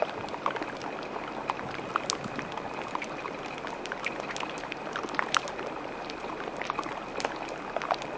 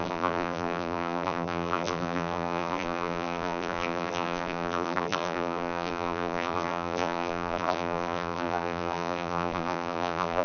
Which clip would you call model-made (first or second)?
second